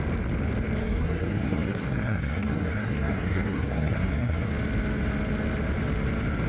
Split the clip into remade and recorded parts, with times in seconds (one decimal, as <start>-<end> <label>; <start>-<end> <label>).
0.0-0.8 recorded; 0.8-4.5 remade; 4.5-6.5 recorded